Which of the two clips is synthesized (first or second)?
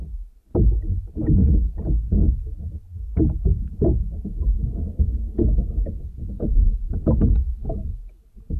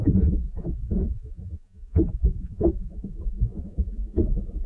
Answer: second